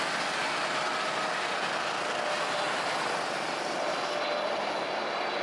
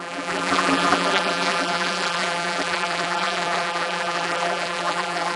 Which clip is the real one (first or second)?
first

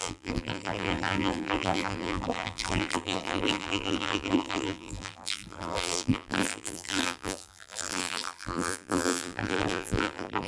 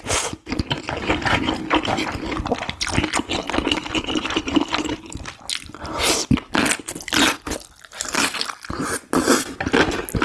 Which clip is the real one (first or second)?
second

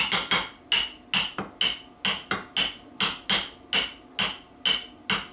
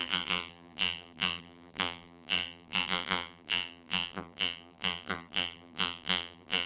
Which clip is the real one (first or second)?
first